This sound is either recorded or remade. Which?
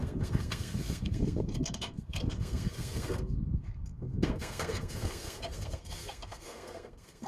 remade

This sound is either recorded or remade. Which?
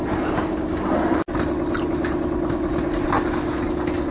recorded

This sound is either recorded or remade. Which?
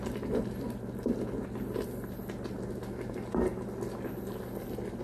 recorded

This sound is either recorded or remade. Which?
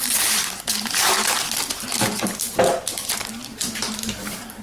remade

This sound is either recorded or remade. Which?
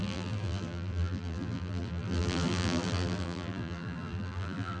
remade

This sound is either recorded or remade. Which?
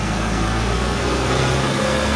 remade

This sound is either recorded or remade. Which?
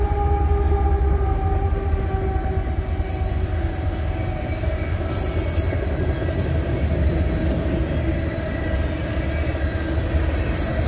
recorded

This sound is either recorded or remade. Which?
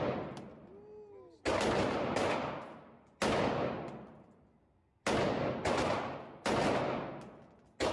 recorded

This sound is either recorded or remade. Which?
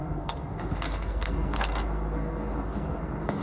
remade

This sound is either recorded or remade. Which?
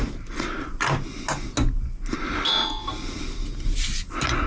recorded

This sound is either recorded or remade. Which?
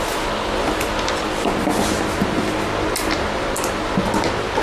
recorded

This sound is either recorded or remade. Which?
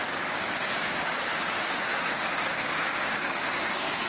remade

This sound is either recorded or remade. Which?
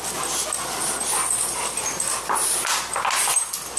recorded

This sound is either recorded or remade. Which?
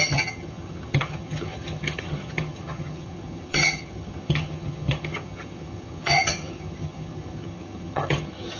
remade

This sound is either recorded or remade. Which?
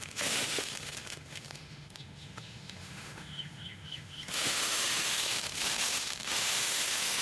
remade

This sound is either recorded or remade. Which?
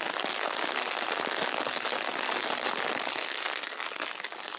recorded